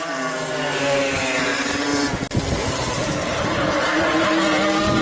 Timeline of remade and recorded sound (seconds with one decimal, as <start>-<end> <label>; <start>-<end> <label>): 0.0-5.0 recorded